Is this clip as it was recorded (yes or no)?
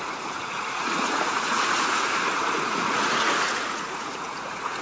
no